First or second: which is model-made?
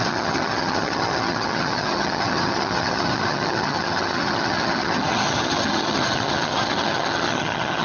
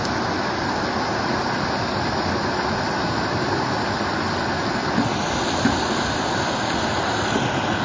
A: first